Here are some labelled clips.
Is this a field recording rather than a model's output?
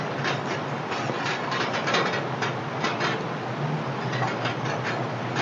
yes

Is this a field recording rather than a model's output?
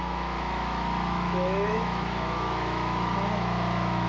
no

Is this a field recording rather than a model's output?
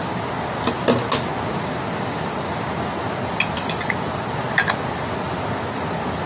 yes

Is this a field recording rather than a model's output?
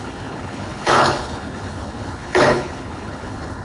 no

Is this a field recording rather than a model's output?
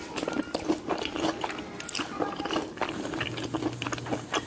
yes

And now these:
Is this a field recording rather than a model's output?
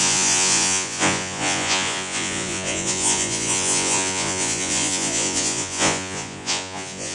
no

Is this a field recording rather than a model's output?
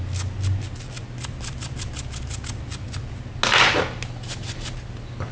yes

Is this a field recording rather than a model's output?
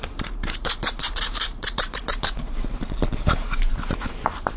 no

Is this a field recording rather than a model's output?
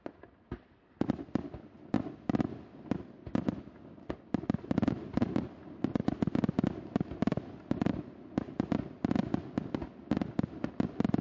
yes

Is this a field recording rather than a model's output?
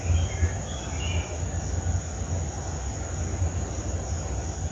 yes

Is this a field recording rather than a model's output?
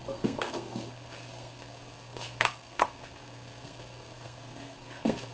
no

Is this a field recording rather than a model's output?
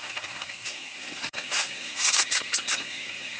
no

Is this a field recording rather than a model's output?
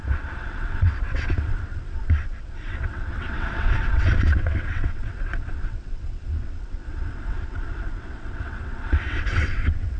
no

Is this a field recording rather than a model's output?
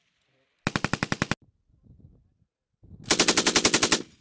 yes